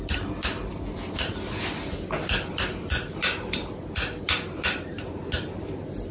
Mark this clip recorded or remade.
recorded